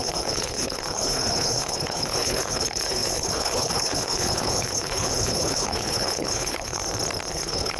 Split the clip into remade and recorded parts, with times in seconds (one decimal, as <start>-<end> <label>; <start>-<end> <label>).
0.0-6.8 remade; 6.8-7.3 recorded; 7.3-7.8 remade